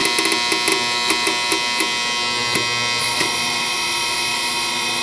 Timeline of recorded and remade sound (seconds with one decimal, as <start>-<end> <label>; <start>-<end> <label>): 0.0-3.0 recorded; 3.0-5.0 remade